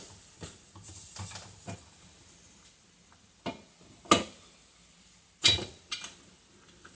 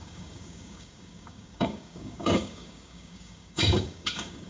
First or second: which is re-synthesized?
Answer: second